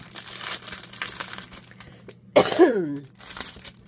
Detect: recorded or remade recorded